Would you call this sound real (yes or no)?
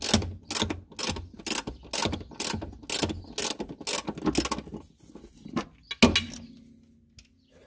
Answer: yes